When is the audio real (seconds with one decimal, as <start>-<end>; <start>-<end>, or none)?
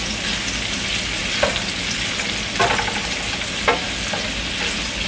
0.0-5.1